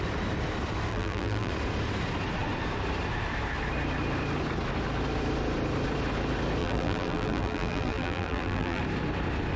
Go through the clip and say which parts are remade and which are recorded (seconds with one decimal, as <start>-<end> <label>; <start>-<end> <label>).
0.0-0.9 recorded; 0.9-1.5 remade; 1.5-6.6 recorded; 6.6-8.8 remade; 8.8-9.6 recorded